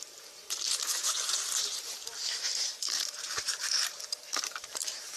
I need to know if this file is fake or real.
fake